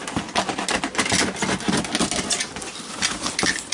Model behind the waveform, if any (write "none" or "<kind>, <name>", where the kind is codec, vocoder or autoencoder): none